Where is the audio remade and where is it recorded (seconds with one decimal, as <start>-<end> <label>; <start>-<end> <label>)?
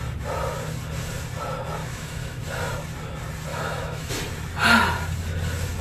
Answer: 0.0-1.8 recorded; 1.8-2.4 remade; 2.4-3.5 recorded; 3.5-4.1 remade; 4.1-5.8 recorded